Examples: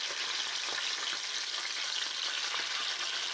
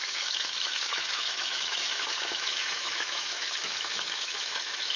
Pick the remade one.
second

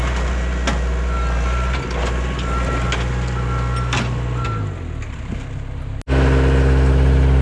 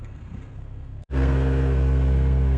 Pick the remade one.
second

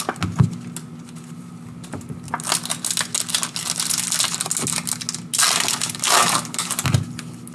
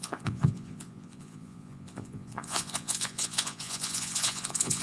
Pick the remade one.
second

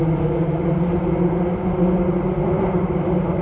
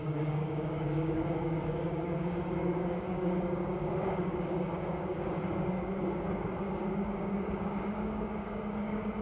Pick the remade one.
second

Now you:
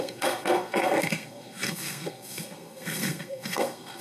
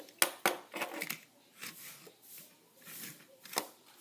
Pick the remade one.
first